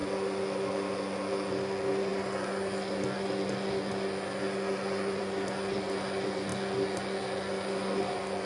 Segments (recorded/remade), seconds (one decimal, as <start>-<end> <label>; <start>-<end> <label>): 0.0-8.5 recorded